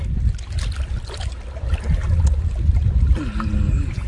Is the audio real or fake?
real